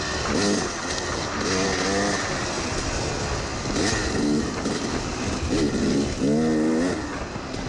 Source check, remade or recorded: recorded